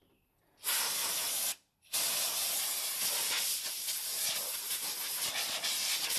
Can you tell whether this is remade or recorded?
recorded